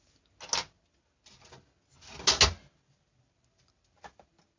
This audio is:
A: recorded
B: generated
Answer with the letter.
A